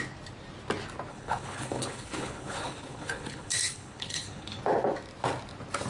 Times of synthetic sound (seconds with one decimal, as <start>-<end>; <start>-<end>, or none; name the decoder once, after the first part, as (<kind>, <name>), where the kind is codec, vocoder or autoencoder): 1.1-4.6 (codec, HILCodec)